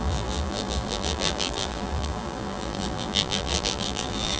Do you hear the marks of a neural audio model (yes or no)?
yes